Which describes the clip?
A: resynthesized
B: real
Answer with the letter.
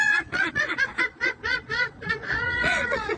A